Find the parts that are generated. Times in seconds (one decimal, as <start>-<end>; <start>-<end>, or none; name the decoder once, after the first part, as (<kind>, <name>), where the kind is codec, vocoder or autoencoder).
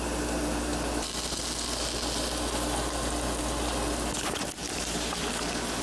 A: 4.6-5.3 (vocoder, BigVGAN v2)